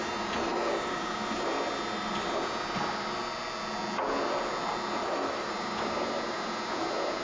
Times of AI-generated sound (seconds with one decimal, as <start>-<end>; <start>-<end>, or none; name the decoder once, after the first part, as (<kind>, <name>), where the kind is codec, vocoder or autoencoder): 5.0-5.5 (autoencoder, DAC-VAE)